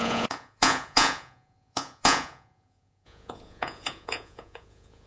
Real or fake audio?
fake